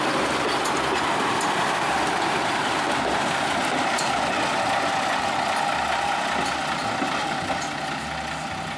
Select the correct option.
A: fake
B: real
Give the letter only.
B